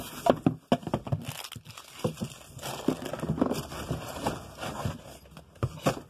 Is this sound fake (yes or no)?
no